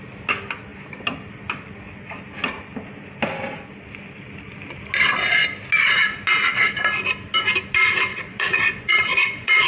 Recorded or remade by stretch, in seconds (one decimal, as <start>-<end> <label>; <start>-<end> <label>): 0.0-8.1 recorded; 8.1-9.7 remade